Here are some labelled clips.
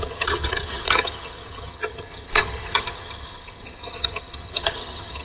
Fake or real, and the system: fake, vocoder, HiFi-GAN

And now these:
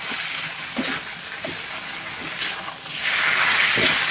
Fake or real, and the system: real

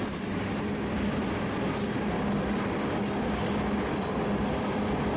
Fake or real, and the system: real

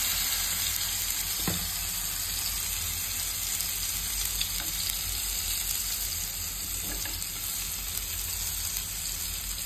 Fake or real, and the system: real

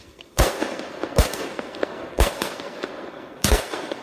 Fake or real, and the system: fake, codec, SNAC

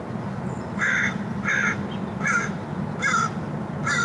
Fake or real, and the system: real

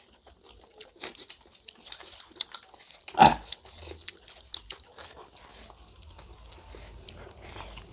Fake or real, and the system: real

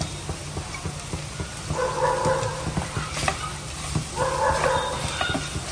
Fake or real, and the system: real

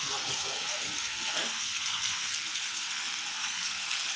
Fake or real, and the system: fake, codec, SNAC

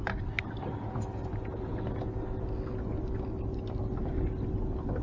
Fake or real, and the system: real